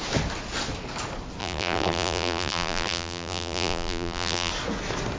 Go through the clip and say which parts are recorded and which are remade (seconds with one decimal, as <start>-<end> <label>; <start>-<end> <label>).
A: 0.0-1.4 recorded; 1.4-4.5 remade; 4.5-5.2 recorded